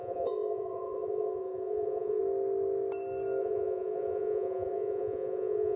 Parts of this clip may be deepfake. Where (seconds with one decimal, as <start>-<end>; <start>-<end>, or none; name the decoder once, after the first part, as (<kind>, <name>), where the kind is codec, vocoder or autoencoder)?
0.0-2.2 (vocoder, Vocos); 3.4-5.8